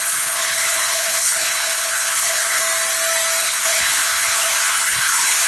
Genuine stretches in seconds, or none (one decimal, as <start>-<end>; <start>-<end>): 2.6-3.4